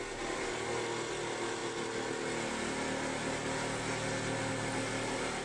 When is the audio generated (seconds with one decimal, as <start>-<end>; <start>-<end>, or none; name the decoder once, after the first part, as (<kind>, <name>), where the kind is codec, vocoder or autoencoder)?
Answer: none